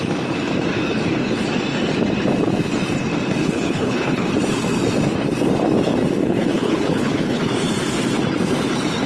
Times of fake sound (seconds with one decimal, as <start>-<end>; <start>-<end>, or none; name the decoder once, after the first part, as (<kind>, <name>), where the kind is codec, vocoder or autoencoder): 3.4-4.3 (codec, HILCodec); 6.2-7.4